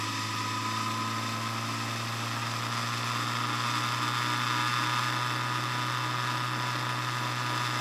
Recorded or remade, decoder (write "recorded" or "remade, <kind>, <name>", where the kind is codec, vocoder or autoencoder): recorded